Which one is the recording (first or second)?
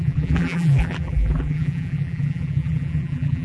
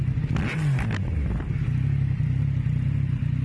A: second